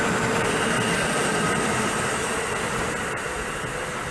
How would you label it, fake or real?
real